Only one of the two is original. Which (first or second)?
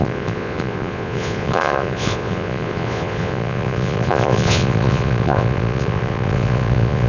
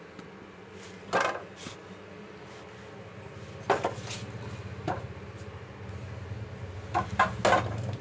second